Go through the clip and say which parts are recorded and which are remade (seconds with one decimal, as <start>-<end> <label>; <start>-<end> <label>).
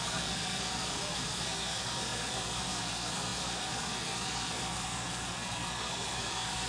0.0-6.7 remade